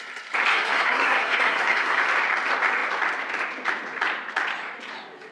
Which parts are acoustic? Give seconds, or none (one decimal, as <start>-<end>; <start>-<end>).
0.0-0.5; 2.0-5.3